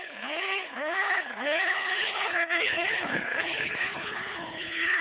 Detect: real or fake fake